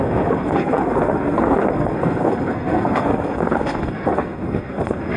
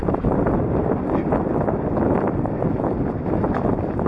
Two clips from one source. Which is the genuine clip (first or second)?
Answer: second